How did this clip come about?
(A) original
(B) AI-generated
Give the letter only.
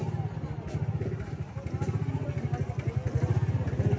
A